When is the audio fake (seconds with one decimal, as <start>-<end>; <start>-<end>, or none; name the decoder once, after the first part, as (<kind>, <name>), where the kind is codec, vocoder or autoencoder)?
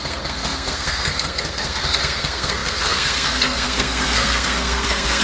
0.0-5.2 (codec, SNAC)